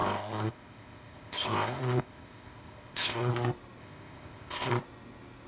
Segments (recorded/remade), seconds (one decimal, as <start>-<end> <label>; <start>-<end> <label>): 0.0-3.3 remade; 3.3-3.8 recorded; 3.8-4.7 remade; 4.7-5.5 recorded